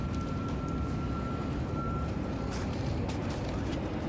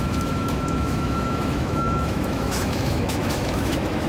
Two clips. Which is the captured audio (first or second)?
first